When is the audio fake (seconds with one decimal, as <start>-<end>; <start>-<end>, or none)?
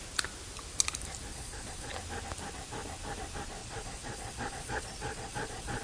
1.3-1.9; 3.6-5.8